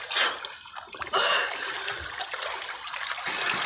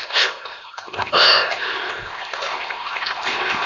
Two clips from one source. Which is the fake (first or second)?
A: second